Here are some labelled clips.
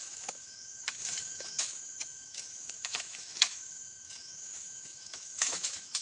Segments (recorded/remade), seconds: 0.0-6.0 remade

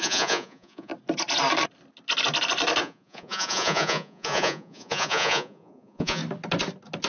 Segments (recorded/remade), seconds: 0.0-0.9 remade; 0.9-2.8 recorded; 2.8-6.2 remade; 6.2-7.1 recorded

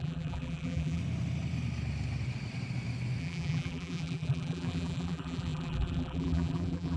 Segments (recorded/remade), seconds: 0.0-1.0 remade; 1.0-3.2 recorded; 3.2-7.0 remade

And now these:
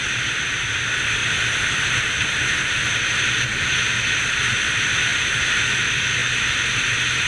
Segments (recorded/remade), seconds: 0.0-1.2 recorded; 1.2-2.6 remade; 2.6-6.2 recorded; 6.2-7.3 remade

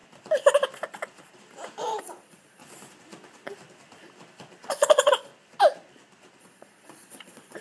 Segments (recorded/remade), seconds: 0.0-2.0 recorded; 2.0-2.6 remade; 2.6-4.7 recorded; 4.7-5.3 remade; 5.3-6.4 recorded; 6.4-7.6 remade